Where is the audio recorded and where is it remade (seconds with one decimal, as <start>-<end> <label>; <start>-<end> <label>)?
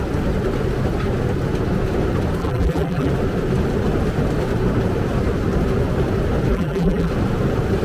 0.0-2.4 recorded; 2.4-3.1 remade; 3.1-6.5 recorded; 6.5-7.1 remade; 7.1-7.8 recorded